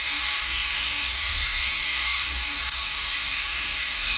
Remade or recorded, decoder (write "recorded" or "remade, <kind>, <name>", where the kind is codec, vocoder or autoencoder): remade, codec, DAC